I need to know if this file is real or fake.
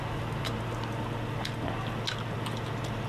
real